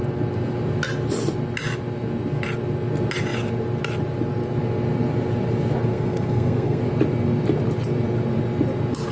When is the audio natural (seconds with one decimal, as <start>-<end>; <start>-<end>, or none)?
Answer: 0.0-5.9; 6.8-9.1